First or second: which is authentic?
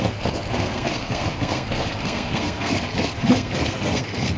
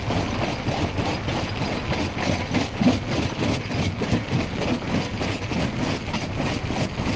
second